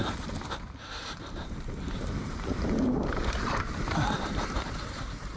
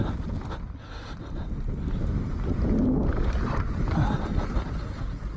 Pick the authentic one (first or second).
second